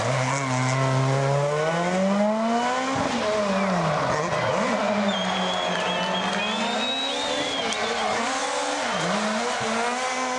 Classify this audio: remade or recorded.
recorded